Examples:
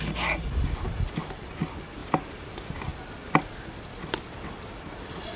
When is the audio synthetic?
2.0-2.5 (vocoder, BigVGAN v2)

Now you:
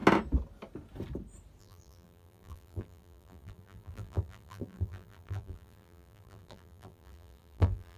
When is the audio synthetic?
1.6-8.0 (vocoder, BigVGAN v2)